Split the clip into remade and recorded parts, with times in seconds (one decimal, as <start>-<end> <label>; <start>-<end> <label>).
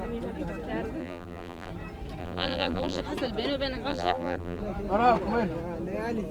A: 0.0-1.0 recorded; 1.0-1.7 remade; 1.7-2.2 recorded; 2.2-3.0 remade; 3.0-3.9 recorded; 3.9-4.6 remade; 4.6-6.3 recorded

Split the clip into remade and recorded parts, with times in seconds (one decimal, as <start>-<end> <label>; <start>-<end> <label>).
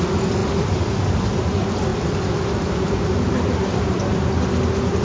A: 0.0-0.4 recorded; 0.4-1.1 remade; 1.1-5.0 recorded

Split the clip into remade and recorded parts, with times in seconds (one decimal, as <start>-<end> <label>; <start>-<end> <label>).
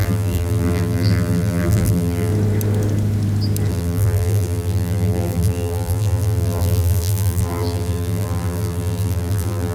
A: 0.0-2.3 remade; 2.3-3.7 recorded; 3.7-9.7 remade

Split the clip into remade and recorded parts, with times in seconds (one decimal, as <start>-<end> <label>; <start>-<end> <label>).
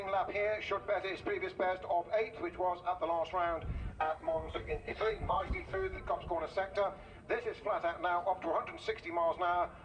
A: 0.0-3.9 recorded; 3.9-6.0 remade; 6.0-9.8 recorded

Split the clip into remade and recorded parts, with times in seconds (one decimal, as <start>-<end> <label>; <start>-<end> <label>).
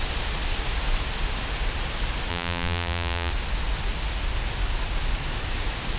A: 0.0-2.3 recorded; 2.3-3.3 remade; 3.3-6.0 recorded